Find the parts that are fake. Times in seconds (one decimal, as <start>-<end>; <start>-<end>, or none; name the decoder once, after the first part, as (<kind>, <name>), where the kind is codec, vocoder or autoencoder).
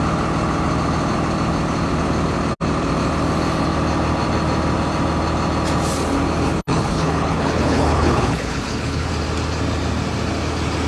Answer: 6.5-9.1 (codec, HILCodec)